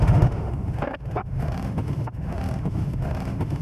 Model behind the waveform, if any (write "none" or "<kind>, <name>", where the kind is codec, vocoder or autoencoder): autoencoder, DAC-VAE